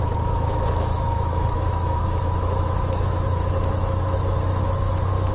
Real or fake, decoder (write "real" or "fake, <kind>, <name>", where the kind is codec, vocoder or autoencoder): fake, autoencoder, DAC-VAE